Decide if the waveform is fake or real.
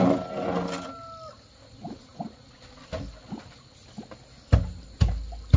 real